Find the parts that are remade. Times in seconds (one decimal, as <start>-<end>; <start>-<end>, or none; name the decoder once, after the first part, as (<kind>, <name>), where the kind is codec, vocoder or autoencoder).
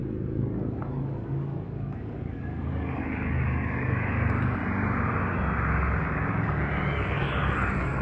0.0-4.6 (codec, DAC); 6.0-8.0